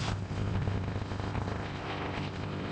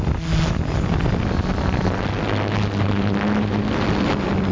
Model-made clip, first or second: first